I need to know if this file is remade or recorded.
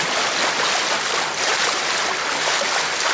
recorded